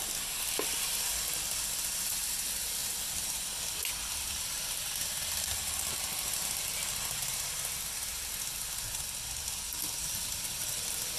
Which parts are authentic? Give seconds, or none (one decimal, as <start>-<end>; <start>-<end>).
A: 0.0-11.2